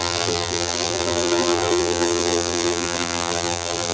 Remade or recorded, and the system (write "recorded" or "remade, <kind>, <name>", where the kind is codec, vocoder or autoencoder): remade, vocoder, BigVGAN v2